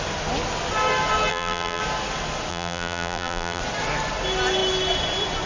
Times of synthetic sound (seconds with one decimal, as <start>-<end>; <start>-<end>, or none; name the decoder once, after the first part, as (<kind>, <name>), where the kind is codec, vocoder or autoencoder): 1.3-1.8 (vocoder, BigVGAN v2); 2.5-3.6